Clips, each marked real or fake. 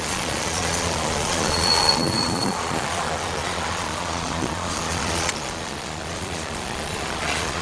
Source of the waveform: fake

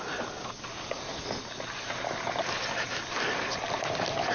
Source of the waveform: real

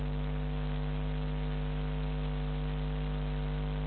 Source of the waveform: real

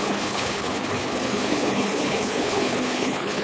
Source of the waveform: fake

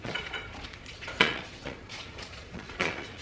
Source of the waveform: fake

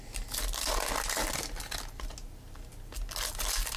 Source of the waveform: real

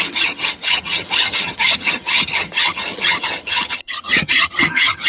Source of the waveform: fake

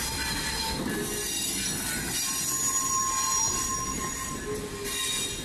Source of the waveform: real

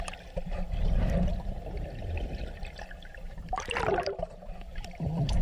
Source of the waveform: fake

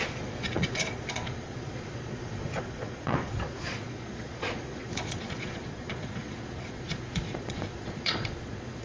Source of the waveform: fake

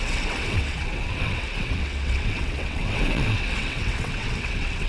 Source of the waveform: fake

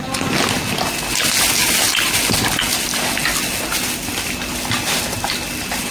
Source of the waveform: real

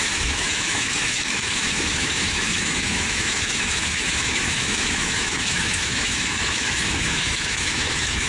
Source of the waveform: fake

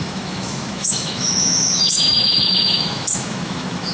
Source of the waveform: fake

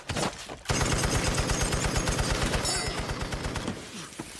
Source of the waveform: real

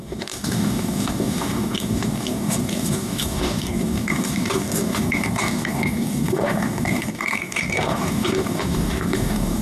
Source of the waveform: fake